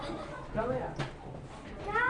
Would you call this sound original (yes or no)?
yes